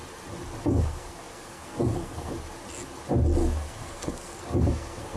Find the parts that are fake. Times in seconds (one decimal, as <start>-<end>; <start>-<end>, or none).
0.6-2.3; 3.4-5.2